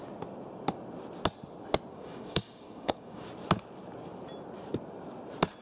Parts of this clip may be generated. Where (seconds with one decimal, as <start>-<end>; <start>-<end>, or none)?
1.9-3.3